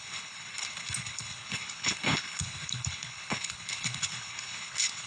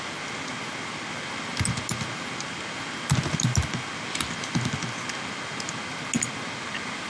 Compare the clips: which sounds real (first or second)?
second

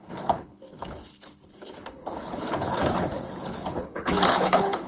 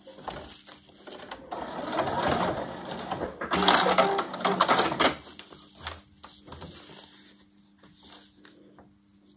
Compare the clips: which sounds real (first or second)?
second